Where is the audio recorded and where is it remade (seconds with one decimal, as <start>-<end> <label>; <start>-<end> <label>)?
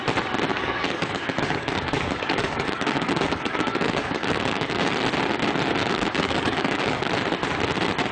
0.0-0.5 recorded; 0.5-4.9 remade; 4.9-5.8 recorded; 5.8-7.1 remade; 7.1-8.1 recorded